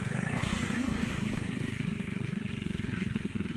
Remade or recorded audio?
remade